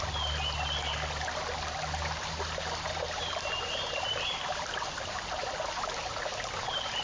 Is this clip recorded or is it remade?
recorded